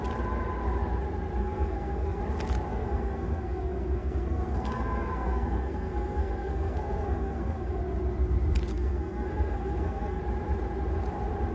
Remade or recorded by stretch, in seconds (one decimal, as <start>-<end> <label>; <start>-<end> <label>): 0.0-1.4 recorded; 1.4-2.2 remade; 2.2-2.7 recorded; 2.7-7.8 remade; 7.8-8.7 recorded; 8.7-10.2 remade; 10.2-11.5 recorded